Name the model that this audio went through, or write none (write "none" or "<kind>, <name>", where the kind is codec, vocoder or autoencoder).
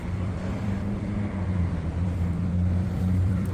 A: vocoder, BigVGAN v2